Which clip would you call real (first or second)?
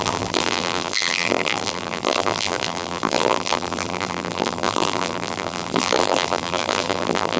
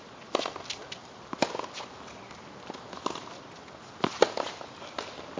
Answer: second